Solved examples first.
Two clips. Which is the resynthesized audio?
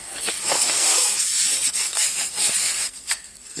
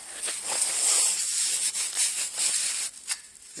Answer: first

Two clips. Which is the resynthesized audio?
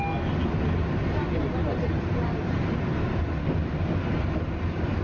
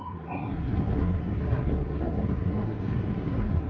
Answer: second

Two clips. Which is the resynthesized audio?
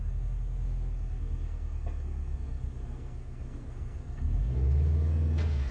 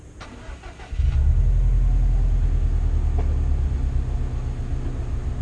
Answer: first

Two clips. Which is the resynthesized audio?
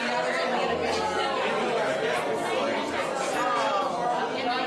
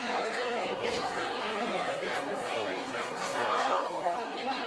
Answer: second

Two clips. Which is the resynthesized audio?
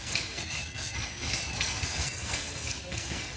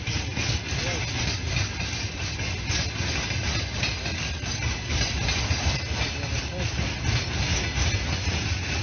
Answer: first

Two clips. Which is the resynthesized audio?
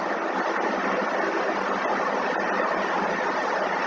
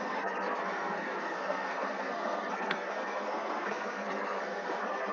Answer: second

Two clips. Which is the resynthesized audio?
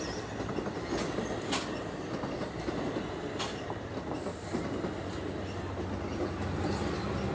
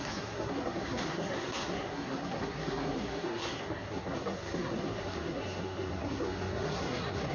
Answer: second